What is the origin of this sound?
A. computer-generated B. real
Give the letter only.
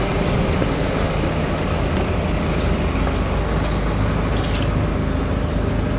B